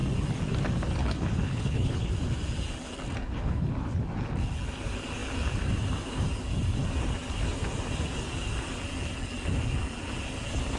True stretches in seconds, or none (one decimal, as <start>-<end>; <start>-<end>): 0.0-1.0; 2.1-3.2; 3.7-10.8